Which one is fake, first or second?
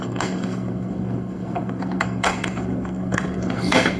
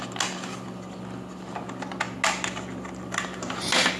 first